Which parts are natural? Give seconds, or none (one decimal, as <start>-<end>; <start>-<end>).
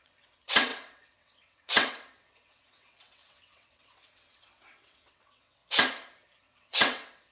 5.6-6.4